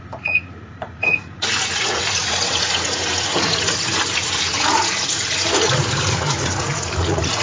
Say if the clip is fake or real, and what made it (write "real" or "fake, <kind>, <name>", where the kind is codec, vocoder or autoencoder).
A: fake, vocoder, Vocos